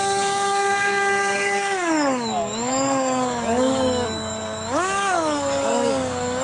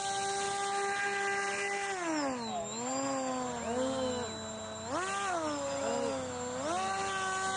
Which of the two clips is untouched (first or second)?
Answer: second